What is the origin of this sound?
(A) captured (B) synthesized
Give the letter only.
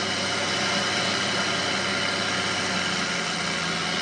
A